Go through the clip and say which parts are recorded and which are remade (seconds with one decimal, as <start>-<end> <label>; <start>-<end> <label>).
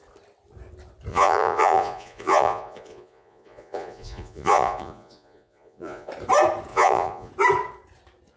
0.0-1.1 recorded; 1.1-6.1 remade; 6.1-6.7 recorded; 6.7-7.3 remade; 7.3-8.4 recorded